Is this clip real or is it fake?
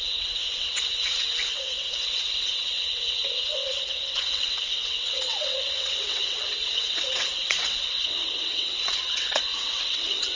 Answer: fake